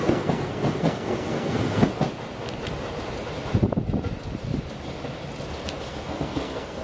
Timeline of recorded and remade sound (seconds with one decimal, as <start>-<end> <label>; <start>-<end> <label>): 0.0-1.9 remade; 1.9-5.9 recorded; 5.9-6.8 remade